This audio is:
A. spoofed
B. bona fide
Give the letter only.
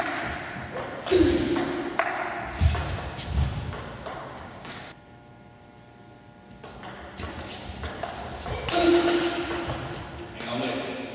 B